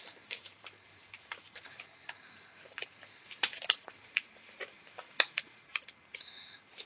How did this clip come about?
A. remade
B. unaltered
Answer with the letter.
A